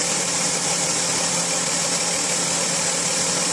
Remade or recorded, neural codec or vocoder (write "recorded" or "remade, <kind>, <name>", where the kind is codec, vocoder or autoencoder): recorded